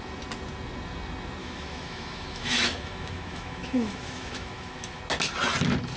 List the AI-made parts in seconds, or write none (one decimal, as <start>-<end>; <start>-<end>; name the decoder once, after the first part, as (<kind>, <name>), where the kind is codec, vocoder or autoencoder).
1.4-5.0 (autoencoder, DAC-VAE)